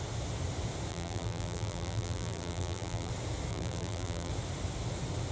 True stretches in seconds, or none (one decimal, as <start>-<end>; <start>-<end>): 0.0-0.9; 3.1-3.5; 4.3-5.3